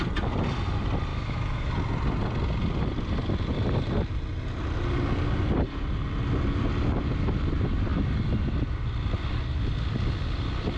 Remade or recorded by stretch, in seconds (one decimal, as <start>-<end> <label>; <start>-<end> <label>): 0.0-1.1 recorded; 1.1-1.7 remade; 1.7-10.8 recorded